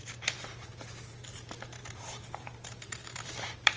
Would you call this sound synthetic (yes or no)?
yes